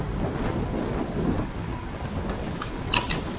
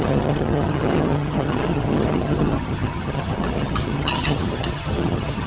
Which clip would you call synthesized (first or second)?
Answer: second